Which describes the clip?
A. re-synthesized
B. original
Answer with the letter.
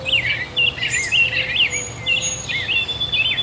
B